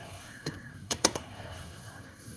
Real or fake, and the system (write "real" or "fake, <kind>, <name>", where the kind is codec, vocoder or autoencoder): fake, codec, SNAC